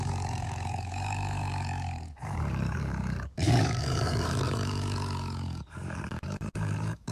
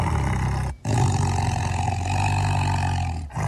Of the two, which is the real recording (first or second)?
second